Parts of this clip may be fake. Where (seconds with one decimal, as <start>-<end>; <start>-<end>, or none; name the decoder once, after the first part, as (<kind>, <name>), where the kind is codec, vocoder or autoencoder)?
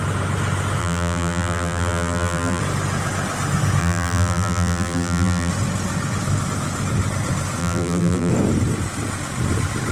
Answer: 0.8-2.6 (vocoder, BigVGAN v2); 3.8-5.5; 7.6-8.3